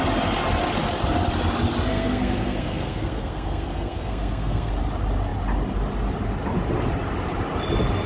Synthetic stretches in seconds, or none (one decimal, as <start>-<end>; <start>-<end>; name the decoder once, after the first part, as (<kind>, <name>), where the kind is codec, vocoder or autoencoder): 1.9-4.7 (codec, SNAC)

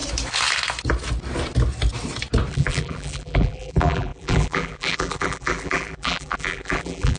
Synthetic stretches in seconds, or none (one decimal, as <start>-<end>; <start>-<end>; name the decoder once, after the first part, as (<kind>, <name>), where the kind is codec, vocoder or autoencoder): 2.5-7.2 (vocoder, BigVGAN v2)

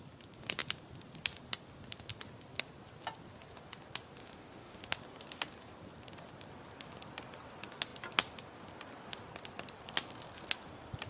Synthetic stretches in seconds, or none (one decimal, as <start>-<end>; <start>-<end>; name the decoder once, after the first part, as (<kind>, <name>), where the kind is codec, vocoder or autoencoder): 4.2-4.8 (autoencoder, DAC-VAE)